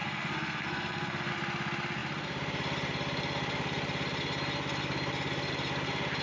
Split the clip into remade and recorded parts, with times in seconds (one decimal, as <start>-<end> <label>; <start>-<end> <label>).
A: 0.0-1.3 remade; 1.3-6.2 recorded